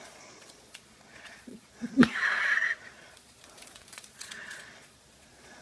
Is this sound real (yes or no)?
no